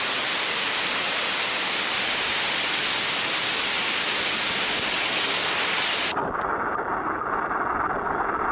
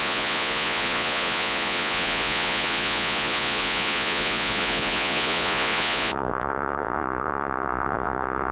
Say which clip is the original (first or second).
first